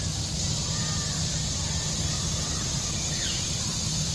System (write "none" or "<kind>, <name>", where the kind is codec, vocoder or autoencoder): none